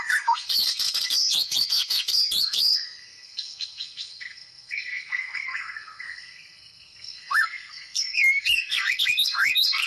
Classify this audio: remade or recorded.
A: remade